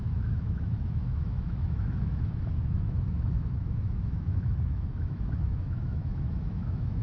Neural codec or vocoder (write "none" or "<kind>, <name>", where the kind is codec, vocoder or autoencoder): autoencoder, DAC-VAE